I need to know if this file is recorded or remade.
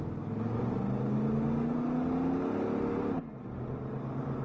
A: recorded